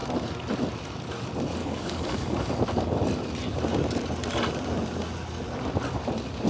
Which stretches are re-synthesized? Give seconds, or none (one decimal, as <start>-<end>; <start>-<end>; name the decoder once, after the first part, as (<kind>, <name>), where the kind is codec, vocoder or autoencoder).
1.6-2.5 (codec, DAC)